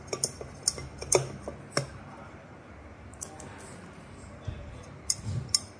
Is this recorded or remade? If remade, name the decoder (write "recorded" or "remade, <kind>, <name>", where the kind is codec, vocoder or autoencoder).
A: recorded